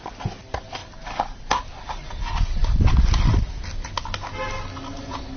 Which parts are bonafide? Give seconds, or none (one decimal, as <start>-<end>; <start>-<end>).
0.0-5.4